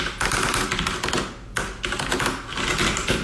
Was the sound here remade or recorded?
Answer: recorded